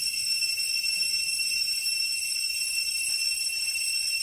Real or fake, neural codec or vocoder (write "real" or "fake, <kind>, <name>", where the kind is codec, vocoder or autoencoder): real